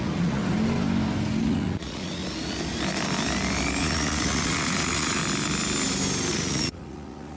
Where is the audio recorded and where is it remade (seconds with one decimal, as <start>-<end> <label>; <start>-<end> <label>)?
0.0-0.4 remade; 0.4-1.4 recorded; 1.4-2.2 remade; 2.2-3.8 recorded; 3.8-5.2 remade; 5.2-6.3 recorded; 6.3-7.4 remade